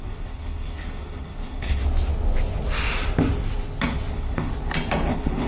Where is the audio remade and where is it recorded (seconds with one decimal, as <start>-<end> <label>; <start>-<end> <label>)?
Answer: 0.0-1.8 remade; 1.8-4.1 recorded; 4.1-4.5 remade; 4.5-5.1 recorded; 5.1-5.5 remade